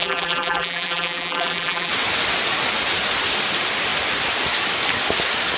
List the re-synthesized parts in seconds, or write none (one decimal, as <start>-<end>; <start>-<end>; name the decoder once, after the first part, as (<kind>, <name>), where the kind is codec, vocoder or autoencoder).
0.0-1.9 (vocoder, BigVGAN v2)